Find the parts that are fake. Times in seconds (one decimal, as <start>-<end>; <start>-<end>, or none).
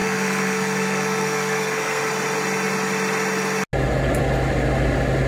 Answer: 0.0-2.0